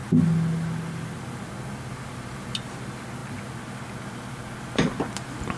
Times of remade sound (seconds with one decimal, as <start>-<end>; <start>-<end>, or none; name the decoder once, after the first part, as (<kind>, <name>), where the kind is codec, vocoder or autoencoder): none